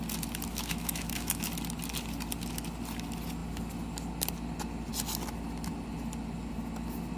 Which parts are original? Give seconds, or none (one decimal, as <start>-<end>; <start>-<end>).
0.0-0.5; 1.5-7.2